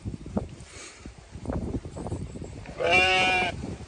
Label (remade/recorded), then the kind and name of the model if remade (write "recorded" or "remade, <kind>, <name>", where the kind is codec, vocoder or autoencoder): remade, vocoder, BigVGAN v2